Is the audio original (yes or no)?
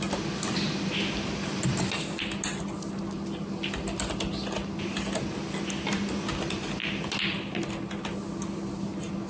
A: yes